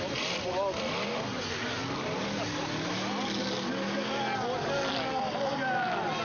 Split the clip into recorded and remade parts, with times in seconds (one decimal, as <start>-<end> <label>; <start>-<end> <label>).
0.0-6.2 recorded